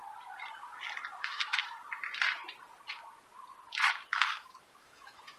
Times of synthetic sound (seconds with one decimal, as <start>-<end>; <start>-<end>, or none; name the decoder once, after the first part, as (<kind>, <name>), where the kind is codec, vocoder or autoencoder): 1.2-1.6 (autoencoder, DAC-VAE); 4.6-5.4

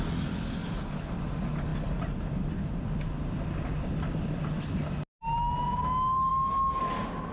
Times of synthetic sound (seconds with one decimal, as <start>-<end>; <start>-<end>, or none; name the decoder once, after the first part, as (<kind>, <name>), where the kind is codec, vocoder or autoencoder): none

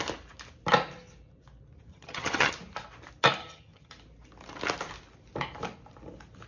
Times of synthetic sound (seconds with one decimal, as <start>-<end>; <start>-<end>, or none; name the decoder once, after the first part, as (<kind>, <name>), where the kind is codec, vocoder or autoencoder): 1.9-2.5 (vocoder, HiFi-GAN); 3.4-3.9